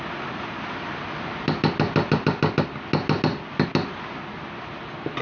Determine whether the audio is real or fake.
real